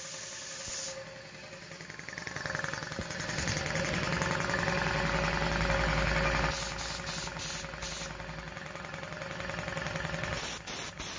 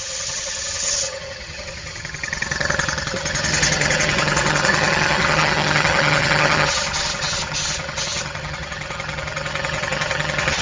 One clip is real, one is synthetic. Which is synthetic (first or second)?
second